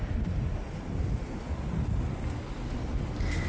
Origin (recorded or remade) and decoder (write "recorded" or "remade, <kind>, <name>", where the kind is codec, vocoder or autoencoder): recorded